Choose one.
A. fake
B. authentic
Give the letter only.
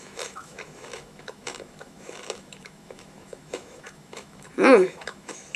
A